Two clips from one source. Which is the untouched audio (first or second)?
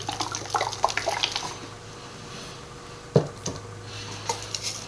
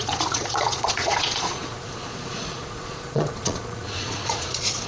first